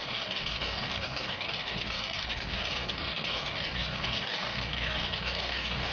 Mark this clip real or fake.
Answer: fake